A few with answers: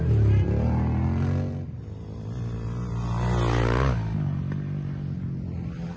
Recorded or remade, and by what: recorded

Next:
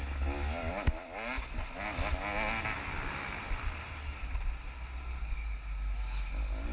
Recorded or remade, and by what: recorded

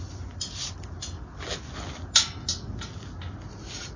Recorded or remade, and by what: recorded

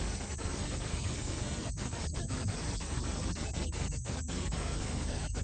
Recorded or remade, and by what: remade, codec, SNAC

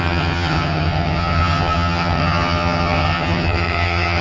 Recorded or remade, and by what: remade, vocoder, HiFi-GAN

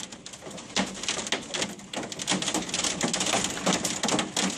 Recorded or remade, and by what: recorded